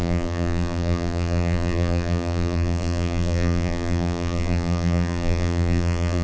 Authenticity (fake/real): fake